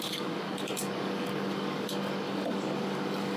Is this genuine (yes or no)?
no